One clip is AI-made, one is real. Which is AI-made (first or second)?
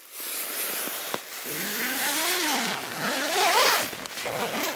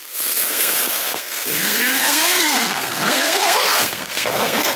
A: second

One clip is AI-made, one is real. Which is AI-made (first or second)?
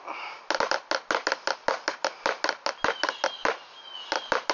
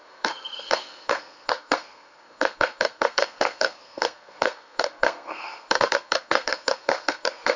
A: second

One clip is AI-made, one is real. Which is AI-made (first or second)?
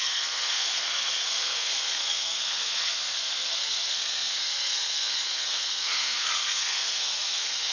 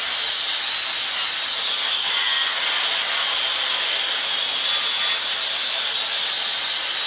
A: first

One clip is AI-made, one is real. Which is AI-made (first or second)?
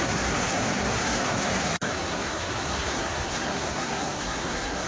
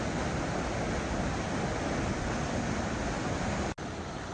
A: first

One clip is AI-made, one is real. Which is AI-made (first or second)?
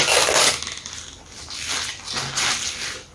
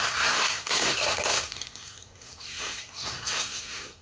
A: second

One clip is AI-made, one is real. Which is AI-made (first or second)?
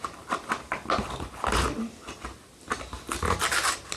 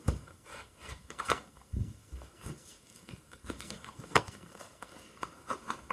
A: second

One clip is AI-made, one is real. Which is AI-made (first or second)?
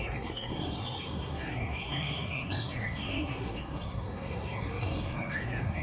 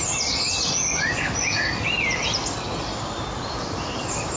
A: first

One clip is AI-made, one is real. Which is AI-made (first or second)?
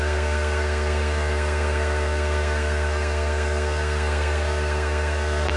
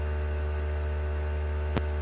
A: first